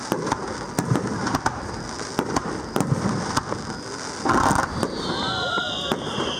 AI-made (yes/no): no